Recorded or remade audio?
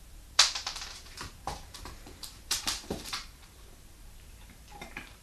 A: remade